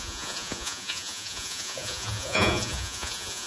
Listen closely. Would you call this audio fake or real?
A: fake